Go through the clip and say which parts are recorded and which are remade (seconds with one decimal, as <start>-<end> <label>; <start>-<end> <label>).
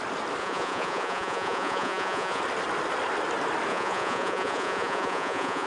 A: 0.0-0.4 recorded; 0.4-2.4 remade; 2.4-3.7 recorded; 3.7-5.7 remade